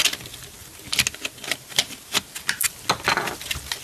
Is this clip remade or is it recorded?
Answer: recorded